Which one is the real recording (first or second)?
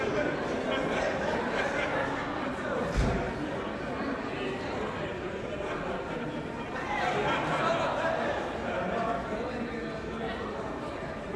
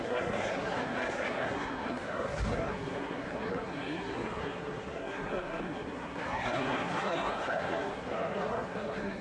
first